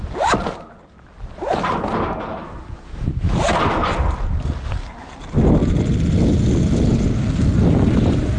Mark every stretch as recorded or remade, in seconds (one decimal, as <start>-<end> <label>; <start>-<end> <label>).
0.0-8.4 recorded